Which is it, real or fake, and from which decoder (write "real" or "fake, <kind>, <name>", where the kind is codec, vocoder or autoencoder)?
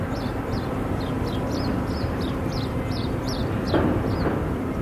fake, vocoder, BigVGAN v2